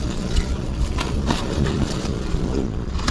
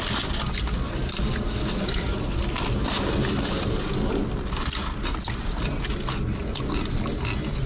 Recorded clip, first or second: second